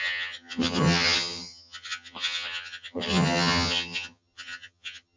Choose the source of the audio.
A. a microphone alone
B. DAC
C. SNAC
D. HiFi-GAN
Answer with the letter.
D